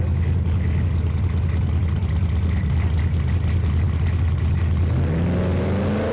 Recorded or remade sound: recorded